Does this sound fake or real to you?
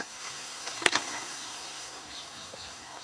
fake